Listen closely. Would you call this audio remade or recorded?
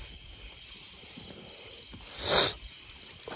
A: recorded